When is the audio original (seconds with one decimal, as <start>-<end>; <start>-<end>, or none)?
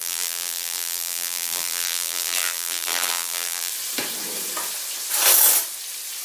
3.7-6.2